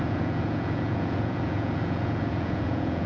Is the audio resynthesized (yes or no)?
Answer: yes